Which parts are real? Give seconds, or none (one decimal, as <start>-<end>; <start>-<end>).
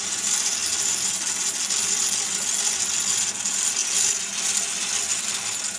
0.0-5.8